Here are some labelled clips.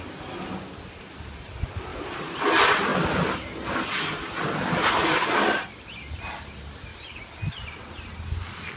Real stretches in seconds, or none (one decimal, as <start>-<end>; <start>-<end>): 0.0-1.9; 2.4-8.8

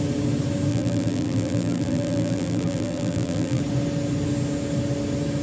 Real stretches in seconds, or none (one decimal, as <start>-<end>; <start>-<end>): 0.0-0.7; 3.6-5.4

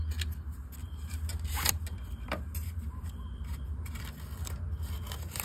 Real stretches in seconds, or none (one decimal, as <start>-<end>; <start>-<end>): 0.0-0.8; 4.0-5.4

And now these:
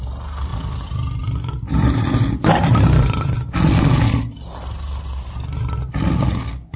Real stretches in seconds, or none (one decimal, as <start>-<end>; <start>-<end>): 0.0-0.5; 3.7-6.8

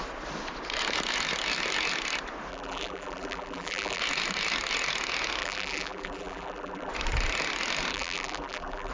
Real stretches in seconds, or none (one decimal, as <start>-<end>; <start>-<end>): 0.0-2.5; 4.0-5.4; 6.9-7.9